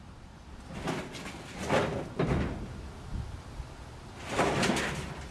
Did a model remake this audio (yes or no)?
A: no